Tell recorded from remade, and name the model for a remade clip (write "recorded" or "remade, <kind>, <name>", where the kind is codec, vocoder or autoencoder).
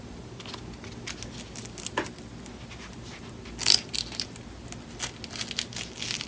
recorded